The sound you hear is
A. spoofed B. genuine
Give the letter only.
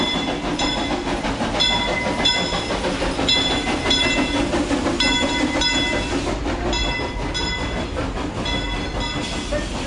B